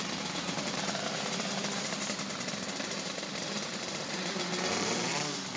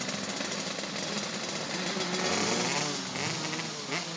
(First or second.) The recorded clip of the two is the second